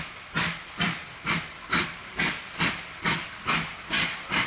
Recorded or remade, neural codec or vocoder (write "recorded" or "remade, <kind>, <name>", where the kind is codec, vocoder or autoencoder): recorded